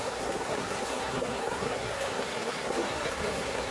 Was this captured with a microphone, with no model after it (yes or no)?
no